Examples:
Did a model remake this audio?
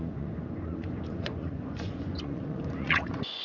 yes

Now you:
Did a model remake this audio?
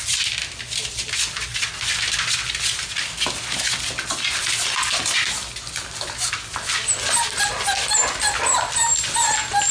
no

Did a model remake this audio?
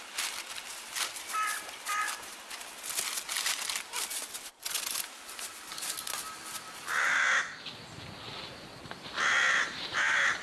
no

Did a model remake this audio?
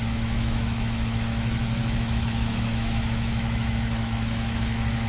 yes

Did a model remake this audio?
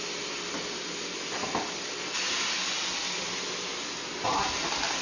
no